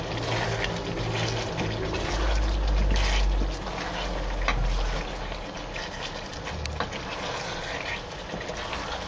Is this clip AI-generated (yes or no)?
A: no